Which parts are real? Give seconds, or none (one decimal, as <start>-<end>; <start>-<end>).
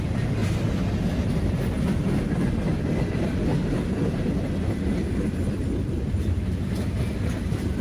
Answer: 0.0-7.8